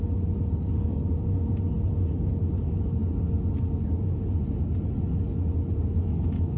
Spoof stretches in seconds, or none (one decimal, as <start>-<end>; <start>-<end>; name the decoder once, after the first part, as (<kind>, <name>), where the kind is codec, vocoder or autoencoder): none